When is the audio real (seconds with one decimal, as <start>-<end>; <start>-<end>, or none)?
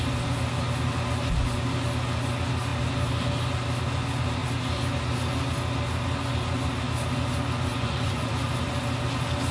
0.0-7.7; 8.3-9.5